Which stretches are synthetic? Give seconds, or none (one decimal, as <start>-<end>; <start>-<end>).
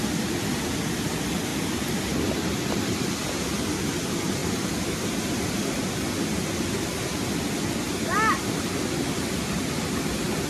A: none